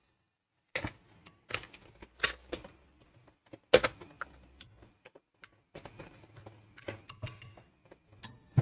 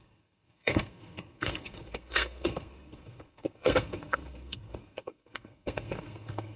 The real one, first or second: first